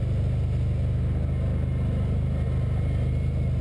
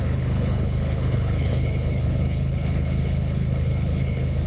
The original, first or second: first